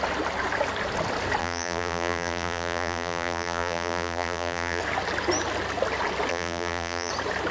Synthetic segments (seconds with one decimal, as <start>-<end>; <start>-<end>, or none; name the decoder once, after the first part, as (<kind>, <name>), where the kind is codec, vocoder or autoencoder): 1.4-4.8 (vocoder, BigVGAN v2); 6.3-7.1